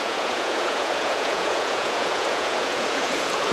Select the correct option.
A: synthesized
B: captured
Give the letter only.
A